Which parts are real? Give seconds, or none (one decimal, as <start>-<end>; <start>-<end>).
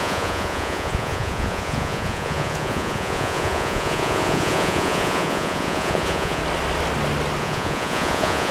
6.4-7.4